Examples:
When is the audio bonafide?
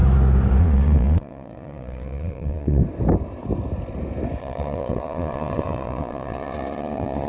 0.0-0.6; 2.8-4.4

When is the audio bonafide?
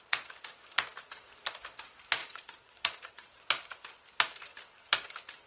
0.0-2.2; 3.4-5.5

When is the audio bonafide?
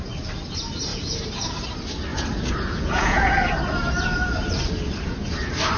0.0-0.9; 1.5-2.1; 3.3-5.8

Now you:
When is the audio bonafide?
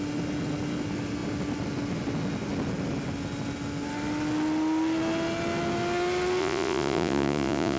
0.0-6.4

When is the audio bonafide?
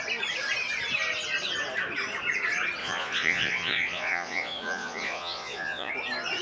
0.0-2.8; 5.9-6.4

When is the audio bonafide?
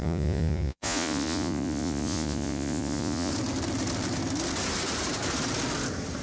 3.3-6.2